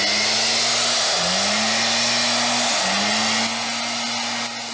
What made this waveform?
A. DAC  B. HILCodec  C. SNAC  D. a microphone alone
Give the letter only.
D